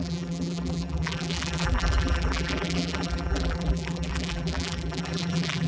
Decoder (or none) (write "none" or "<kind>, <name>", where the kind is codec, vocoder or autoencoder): vocoder, BigVGAN v2